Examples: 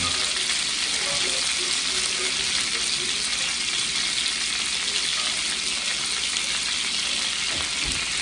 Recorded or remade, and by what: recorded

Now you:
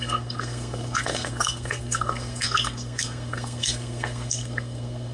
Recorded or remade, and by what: remade, codec, SNAC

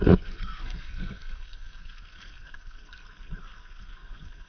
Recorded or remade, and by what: remade, codec, SNAC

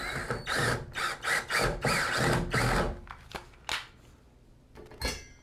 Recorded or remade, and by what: recorded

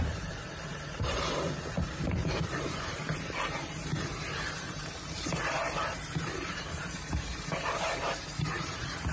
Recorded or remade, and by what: remade, vocoder, BigVGAN v2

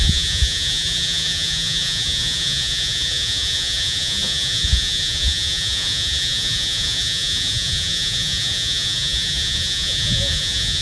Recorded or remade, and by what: remade, vocoder, Vocos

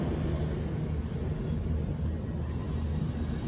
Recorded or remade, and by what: recorded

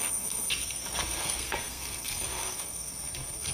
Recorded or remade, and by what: remade, codec, SNAC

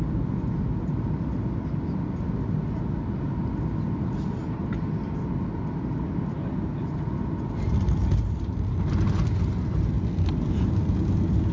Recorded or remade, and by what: recorded